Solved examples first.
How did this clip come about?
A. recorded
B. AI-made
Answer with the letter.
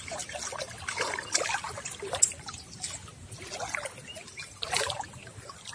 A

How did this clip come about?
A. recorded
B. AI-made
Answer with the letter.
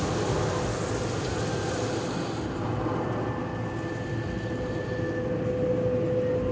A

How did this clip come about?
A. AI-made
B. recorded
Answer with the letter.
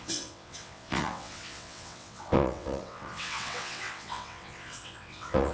A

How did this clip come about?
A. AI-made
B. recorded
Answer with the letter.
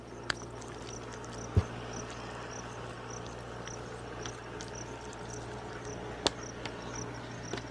B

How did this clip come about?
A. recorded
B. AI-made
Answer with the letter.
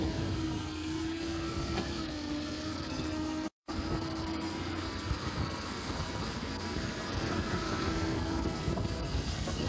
B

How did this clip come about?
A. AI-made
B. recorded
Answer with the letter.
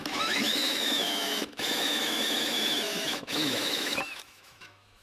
A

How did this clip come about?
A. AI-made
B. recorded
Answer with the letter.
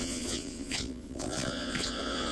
A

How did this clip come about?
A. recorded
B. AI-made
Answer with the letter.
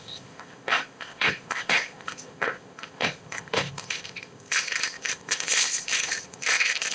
B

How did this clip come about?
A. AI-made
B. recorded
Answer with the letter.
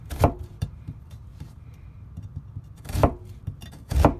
A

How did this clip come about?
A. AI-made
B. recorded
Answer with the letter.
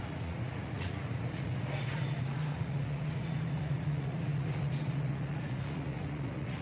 A